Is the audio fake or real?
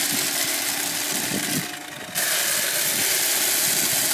real